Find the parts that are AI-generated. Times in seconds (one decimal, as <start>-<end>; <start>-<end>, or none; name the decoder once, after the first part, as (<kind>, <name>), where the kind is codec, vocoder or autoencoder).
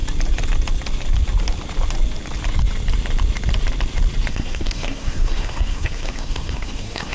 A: 4.3-7.1 (codec, SNAC)